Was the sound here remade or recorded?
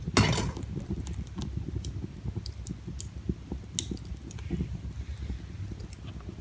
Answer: recorded